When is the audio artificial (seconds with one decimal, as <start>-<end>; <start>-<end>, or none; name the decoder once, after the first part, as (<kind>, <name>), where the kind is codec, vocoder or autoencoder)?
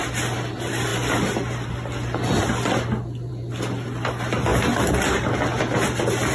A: none